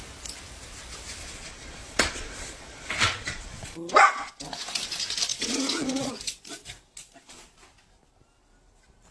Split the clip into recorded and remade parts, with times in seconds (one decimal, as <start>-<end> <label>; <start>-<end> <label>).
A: 0.0-1.2 recorded; 1.2-4.3 remade; 4.3-5.3 recorded; 5.3-6.1 remade; 6.1-9.1 recorded